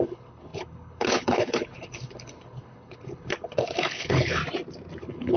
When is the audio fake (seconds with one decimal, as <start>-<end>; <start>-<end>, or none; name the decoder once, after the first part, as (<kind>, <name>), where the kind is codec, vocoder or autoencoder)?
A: 0.0-4.4 (codec, HILCodec); 5.0-5.4